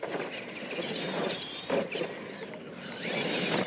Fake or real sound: real